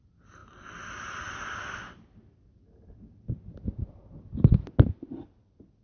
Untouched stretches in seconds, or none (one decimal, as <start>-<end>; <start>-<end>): 0.0-5.8